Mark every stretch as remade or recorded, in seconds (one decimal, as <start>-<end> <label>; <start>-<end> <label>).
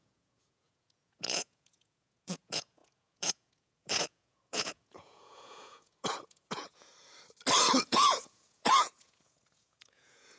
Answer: 0.0-6.9 remade; 6.9-7.8 recorded; 7.8-10.4 remade